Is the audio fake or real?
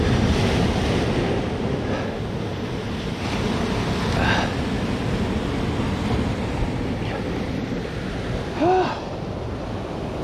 real